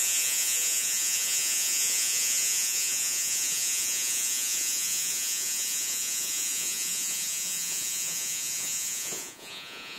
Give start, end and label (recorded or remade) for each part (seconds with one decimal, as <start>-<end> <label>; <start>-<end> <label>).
0.0-10.0 remade